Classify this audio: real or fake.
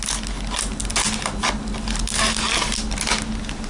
real